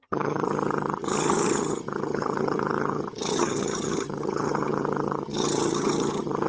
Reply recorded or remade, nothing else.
remade